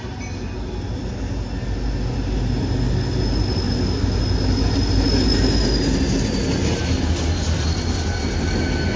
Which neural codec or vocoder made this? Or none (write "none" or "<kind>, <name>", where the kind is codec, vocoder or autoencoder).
none